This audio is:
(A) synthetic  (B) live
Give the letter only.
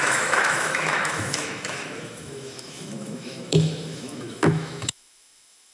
A